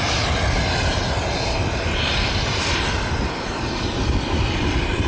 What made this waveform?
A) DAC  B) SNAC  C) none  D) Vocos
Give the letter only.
C